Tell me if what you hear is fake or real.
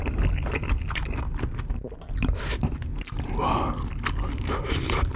real